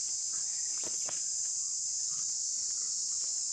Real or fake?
real